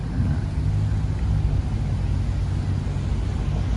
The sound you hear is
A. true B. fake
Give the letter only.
A